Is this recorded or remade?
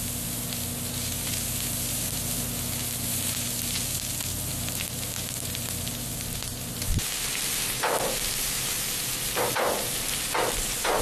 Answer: recorded